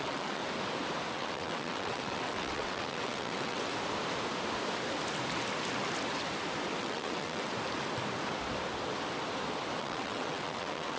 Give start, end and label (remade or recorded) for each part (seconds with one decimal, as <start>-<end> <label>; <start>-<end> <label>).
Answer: 0.0-0.4 remade; 0.4-1.1 recorded; 1.1-3.7 remade; 3.7-6.8 recorded; 6.8-7.5 remade; 7.5-9.8 recorded; 9.8-11.0 remade